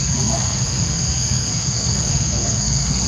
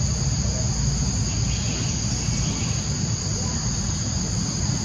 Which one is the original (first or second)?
second